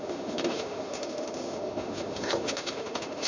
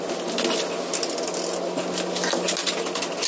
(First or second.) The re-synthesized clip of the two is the first